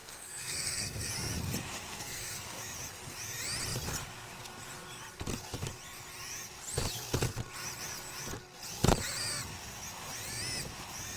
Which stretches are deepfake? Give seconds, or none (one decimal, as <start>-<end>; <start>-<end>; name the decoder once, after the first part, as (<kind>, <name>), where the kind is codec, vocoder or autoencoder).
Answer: 0.0-1.1 (codec, SNAC); 1.9-2.6